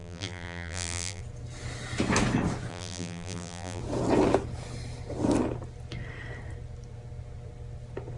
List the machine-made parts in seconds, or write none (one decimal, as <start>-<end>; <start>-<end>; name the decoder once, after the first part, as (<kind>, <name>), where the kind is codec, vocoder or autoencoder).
0.0-1.2 (vocoder, BigVGAN v2); 2.7-3.8